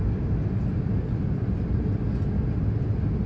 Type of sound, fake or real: real